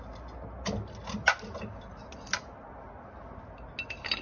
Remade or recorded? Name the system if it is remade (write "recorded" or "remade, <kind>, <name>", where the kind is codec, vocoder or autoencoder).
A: recorded